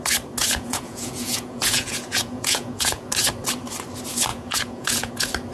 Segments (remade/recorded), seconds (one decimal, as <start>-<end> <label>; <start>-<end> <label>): 0.0-0.4 recorded; 0.4-3.1 remade; 3.1-4.3 recorded; 4.3-5.1 remade; 5.1-5.5 recorded